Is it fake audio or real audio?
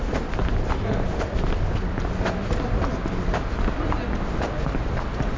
real